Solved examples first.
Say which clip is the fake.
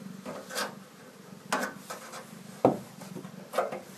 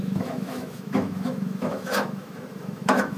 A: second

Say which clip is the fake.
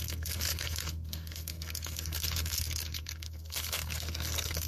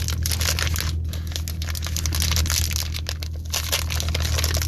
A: first